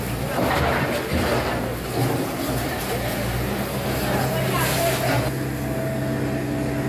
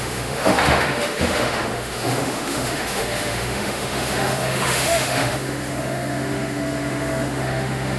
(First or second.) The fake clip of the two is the second